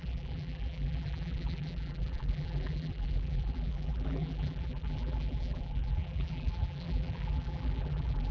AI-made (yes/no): yes